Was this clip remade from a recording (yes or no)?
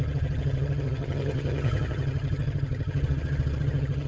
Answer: yes